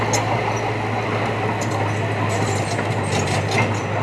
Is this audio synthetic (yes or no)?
no